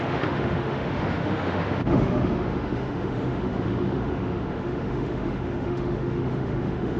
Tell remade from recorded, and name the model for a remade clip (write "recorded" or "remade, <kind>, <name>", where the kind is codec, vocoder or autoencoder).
remade, autoencoder, DAC-VAE